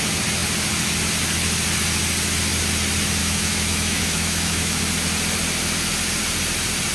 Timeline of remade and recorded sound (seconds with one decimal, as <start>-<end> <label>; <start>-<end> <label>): 0.0-3.2 recorded; 3.2-4.8 remade; 4.8-6.9 recorded